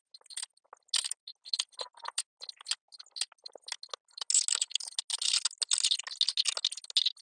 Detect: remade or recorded recorded